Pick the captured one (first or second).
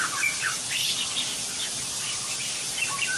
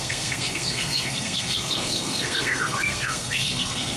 first